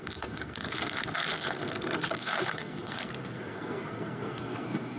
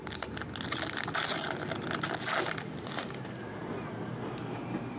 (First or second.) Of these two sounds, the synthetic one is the first